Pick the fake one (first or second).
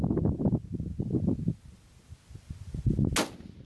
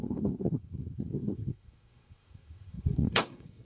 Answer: second